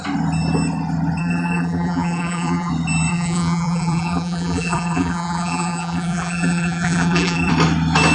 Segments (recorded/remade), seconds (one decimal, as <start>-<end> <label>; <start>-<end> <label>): 0.0-1.2 recorded; 1.2-2.7 remade; 2.7-3.1 recorded; 3.1-7.5 remade; 7.5-8.1 recorded